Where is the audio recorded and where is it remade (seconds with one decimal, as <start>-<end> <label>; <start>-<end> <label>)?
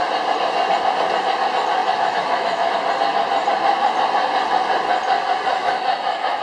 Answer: 0.0-1.8 recorded; 1.8-2.7 remade; 2.7-5.6 recorded; 5.6-6.4 remade